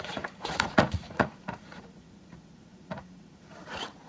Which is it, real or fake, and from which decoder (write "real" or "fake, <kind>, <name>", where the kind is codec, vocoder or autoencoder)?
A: fake, vocoder, Vocos